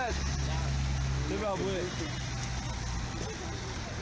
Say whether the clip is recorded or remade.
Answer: recorded